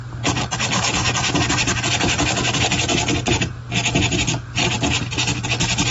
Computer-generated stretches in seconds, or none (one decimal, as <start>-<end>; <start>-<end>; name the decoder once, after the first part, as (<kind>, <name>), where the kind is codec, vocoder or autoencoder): none